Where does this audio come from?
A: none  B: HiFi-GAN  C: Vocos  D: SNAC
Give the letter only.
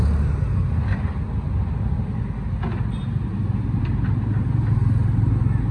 A